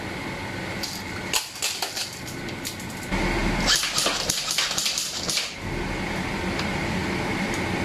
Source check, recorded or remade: recorded